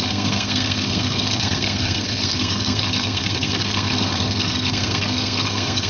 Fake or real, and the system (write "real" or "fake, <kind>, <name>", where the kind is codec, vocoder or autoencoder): fake, codec, SNAC